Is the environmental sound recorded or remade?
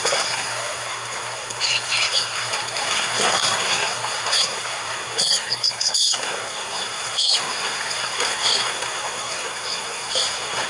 remade